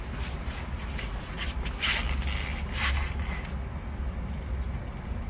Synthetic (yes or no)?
no